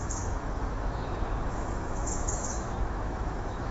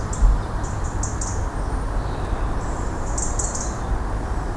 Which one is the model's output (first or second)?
first